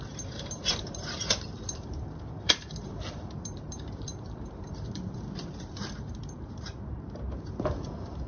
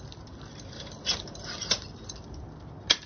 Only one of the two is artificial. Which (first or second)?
first